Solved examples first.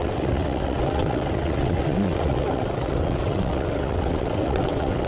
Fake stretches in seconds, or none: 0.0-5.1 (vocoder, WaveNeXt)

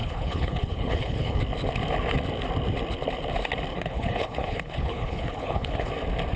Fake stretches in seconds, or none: 0.0-1.4 (codec, HILCodec); 3.7-5.9

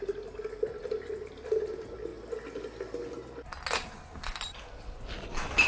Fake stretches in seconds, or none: none

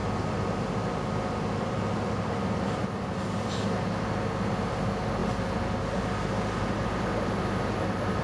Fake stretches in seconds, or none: none

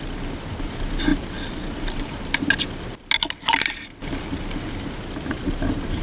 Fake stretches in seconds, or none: none

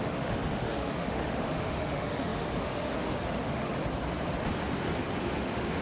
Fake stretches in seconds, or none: 0.0-3.8 (autoencoder, DAC-VAE); 5.2-5.8

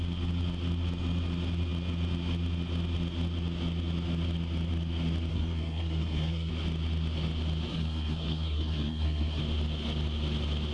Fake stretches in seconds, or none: 5.3-6.5 (codec, SNAC); 7.7-9.4